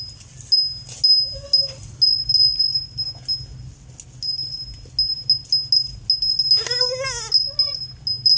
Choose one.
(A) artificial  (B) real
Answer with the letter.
B